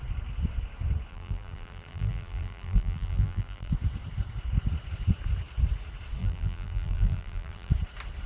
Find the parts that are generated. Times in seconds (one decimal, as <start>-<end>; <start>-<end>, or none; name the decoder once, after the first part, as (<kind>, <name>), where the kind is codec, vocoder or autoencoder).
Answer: 1.1-3.7 (vocoder, BigVGAN v2); 6.2-7.7